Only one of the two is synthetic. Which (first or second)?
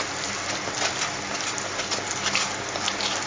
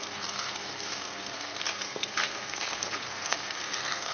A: second